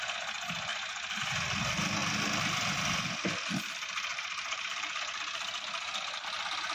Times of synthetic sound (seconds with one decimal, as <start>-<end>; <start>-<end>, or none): 0.7-1.2; 4.1-5.0